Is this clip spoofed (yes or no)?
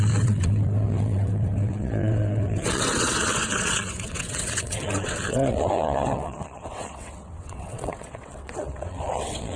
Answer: yes